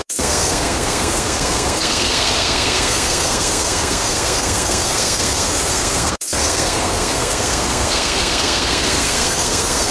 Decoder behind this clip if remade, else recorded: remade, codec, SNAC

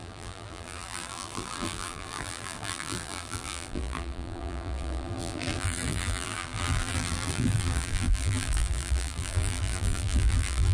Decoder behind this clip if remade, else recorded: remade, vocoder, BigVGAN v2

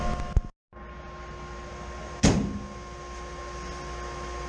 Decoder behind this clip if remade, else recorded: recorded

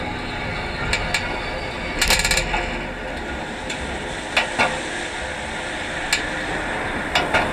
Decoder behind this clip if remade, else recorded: recorded